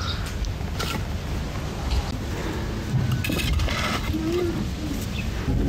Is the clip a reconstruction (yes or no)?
no